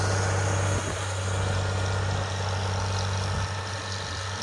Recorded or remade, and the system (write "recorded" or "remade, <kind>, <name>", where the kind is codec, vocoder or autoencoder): recorded